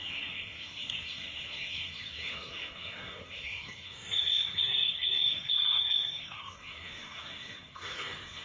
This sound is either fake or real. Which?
fake